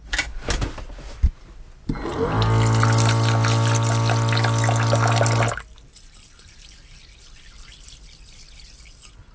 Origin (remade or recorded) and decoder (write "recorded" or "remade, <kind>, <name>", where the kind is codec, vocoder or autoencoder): recorded